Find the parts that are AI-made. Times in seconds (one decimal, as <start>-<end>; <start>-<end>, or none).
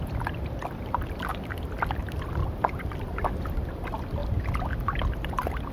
1.3-2.0; 2.4-3.6